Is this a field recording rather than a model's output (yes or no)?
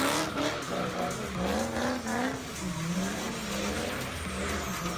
yes